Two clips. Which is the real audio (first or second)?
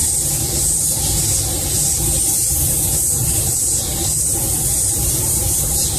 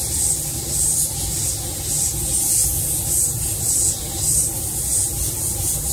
second